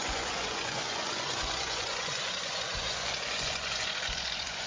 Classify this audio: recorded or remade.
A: remade